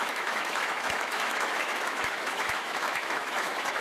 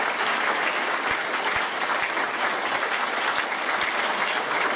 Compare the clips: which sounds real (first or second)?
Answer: second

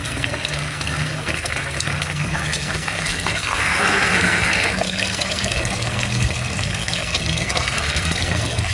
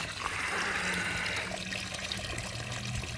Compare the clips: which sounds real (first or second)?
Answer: second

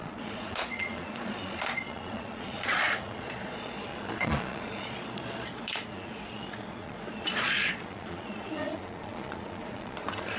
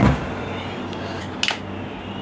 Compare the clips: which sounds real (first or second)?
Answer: second